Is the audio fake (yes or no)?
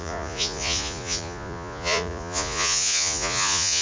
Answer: yes